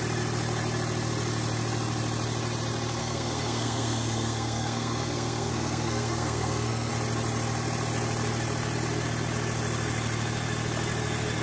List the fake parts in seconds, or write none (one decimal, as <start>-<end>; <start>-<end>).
3.0-6.9